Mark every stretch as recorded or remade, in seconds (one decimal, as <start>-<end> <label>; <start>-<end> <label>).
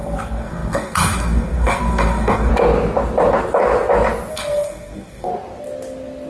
0.0-2.5 remade; 2.5-4.3 recorded; 4.3-5.3 remade; 5.3-6.3 recorded